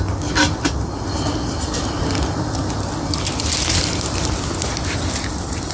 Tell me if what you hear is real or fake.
real